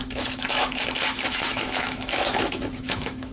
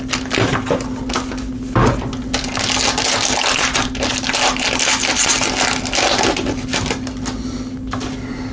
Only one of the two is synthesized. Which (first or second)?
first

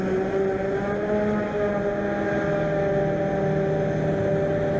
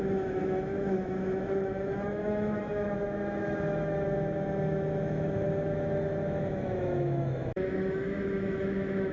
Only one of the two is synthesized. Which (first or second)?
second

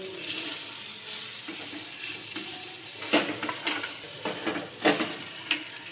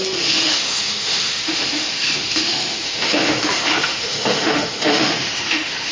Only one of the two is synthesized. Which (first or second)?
second